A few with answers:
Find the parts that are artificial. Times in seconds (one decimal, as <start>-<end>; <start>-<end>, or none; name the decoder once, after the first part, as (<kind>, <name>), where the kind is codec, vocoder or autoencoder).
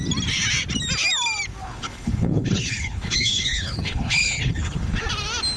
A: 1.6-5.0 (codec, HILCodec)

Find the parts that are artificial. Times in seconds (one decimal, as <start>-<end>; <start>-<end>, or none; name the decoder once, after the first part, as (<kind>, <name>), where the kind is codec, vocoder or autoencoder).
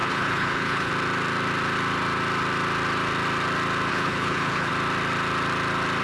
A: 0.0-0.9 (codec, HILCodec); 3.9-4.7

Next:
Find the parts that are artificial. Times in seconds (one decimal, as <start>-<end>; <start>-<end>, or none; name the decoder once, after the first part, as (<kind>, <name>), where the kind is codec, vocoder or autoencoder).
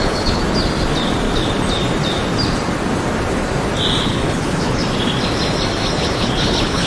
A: 0.0-0.4 (codec, HILCodec); 4.0-4.8; 6.0-6.9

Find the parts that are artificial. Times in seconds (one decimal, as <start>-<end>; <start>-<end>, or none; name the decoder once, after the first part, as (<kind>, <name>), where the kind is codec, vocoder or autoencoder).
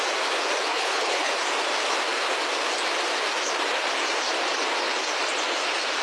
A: 0.7-1.3 (codec, HILCodec)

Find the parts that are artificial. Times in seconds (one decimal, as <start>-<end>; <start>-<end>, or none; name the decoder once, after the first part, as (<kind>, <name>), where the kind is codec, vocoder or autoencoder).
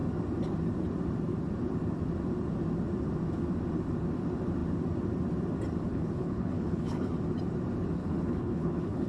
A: 5.9-7.1 (codec, HILCodec); 8.0-9.1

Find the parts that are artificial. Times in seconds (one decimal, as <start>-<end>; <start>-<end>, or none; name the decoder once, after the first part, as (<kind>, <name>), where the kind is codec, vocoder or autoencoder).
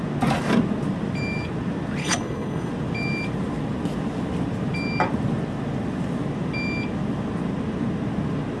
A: 2.0-2.7 (codec, HILCodec)